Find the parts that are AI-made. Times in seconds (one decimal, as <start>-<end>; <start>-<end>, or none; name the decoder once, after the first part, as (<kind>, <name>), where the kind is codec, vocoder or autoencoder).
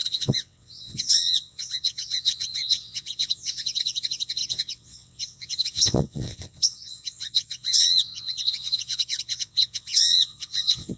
0.0-11.0 (vocoder, WaveNeXt)